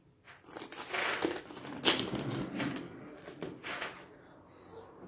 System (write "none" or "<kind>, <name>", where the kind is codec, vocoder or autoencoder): none